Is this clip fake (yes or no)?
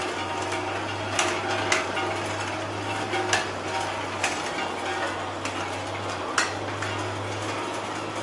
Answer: no